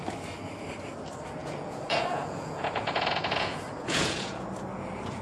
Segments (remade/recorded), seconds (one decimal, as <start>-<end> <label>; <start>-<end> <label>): 0.0-1.4 recorded; 1.4-4.5 remade; 4.5-5.2 recorded